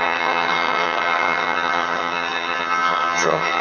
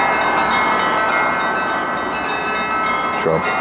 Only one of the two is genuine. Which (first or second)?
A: second